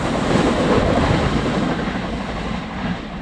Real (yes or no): yes